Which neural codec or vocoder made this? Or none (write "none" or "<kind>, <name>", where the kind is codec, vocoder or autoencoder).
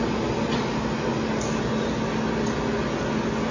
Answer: none